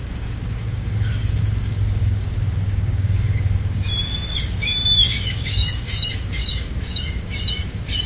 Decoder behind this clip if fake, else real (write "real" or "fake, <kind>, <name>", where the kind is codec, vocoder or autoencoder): fake, codec, DAC